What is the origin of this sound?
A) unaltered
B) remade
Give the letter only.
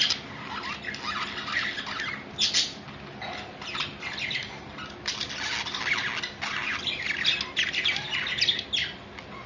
A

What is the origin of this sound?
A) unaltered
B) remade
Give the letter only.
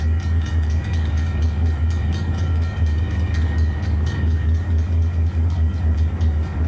B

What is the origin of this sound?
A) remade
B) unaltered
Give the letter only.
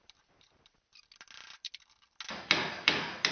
B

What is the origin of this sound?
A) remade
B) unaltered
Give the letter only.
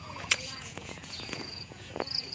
A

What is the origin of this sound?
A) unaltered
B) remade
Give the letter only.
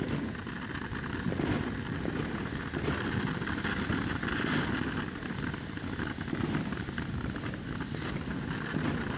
A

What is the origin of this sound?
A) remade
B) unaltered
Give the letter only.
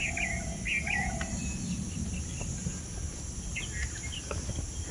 B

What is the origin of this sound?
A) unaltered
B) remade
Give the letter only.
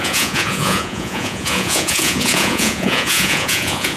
B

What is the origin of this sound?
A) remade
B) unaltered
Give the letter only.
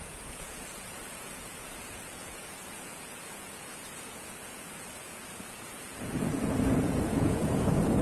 A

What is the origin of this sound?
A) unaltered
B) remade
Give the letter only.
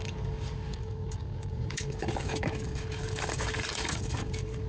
B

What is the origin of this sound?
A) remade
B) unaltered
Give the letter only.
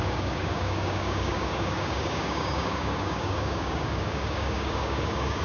A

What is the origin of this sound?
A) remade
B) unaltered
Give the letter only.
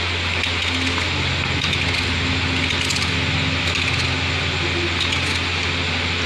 B